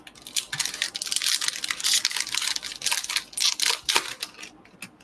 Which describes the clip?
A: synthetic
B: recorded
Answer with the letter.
B